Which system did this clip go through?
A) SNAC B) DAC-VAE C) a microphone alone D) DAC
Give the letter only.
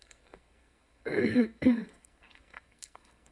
A